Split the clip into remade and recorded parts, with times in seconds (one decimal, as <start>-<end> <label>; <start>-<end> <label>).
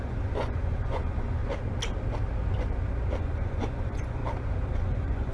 0.0-1.4 remade; 1.4-3.2 recorded; 3.2-4.2 remade; 4.2-4.7 recorded; 4.7-5.3 remade